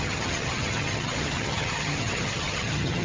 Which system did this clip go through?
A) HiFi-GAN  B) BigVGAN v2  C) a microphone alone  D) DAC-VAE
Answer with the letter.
A